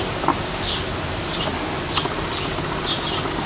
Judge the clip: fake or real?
real